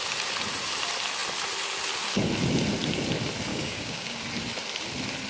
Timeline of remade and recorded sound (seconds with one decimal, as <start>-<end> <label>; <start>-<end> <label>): 0.0-3.5 recorded; 3.5-4.2 remade; 4.2-5.3 recorded